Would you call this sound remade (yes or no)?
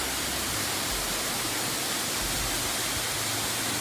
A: no